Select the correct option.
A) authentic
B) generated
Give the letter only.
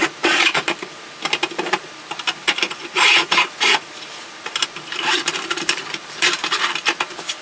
B